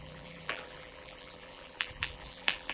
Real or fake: fake